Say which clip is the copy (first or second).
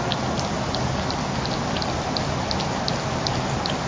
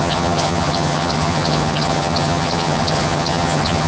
second